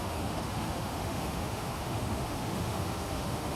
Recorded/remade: remade